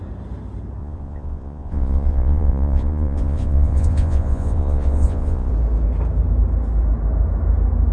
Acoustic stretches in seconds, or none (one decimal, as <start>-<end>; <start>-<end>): 0.0-0.8; 5.5-7.9